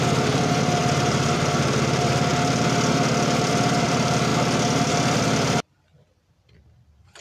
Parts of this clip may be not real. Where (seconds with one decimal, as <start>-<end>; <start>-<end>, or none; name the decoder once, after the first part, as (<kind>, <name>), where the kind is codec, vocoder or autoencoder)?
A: 0.0-2.3 (vocoder, BigVGAN v2); 3.4-4.3; 4.9-7.2